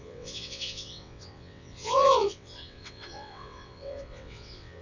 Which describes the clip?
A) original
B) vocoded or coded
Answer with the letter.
B